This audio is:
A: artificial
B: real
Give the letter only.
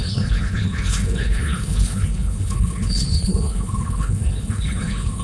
A